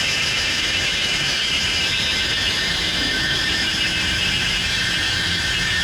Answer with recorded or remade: remade